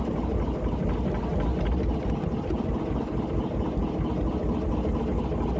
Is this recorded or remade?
recorded